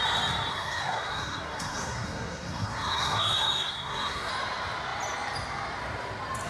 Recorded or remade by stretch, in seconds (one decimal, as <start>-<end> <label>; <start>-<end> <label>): 0.0-0.5 recorded; 0.5-4.3 remade; 4.3-6.5 recorded